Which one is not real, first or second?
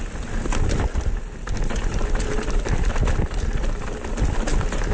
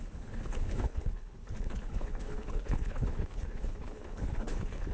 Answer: second